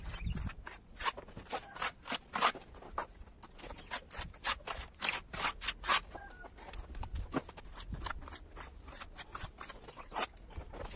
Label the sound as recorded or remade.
recorded